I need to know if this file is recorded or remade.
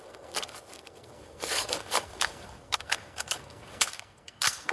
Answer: remade